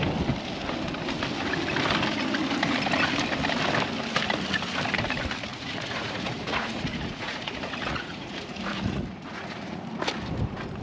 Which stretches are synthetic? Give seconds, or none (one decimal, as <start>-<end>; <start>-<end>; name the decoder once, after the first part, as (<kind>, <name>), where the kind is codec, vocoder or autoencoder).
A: 5.5-9.8 (vocoder, Vocos)